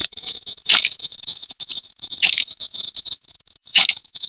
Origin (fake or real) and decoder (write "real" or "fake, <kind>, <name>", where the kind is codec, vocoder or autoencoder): fake, autoencoder, DAC-VAE